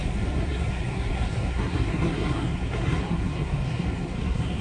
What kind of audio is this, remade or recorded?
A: remade